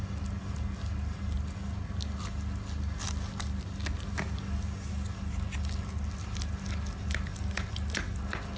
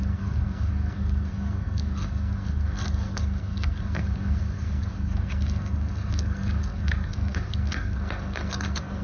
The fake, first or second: second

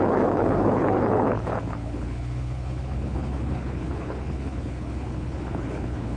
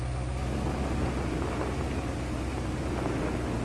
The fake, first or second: first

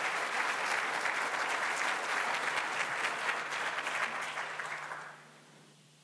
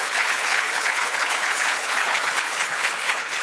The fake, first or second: second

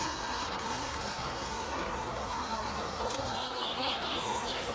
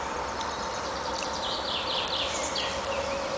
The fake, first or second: first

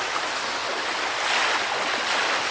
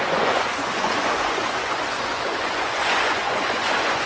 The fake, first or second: second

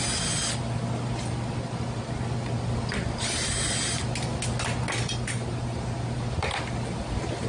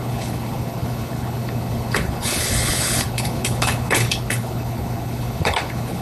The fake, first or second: second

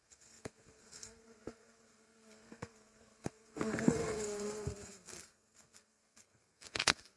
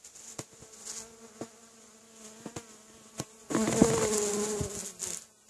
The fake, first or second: first